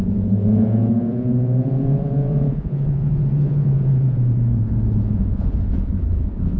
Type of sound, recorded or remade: remade